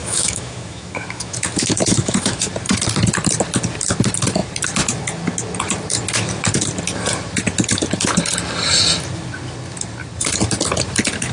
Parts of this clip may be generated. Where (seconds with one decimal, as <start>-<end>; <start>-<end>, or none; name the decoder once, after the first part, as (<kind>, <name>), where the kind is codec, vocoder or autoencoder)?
0.0-2.5 (autoencoder, DAC-VAE)